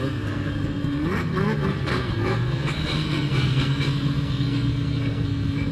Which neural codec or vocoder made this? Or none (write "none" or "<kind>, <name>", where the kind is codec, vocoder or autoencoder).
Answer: codec, SNAC